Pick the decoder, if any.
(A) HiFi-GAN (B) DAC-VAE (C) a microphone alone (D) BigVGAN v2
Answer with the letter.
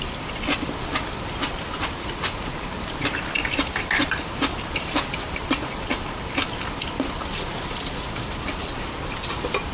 D